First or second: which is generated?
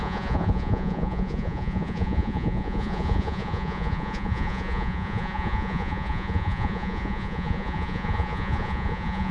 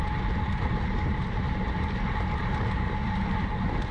first